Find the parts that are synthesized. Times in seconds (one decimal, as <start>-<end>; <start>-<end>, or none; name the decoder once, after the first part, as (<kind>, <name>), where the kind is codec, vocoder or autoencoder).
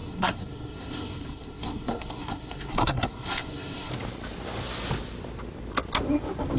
0.0-3.9 (codec, SNAC)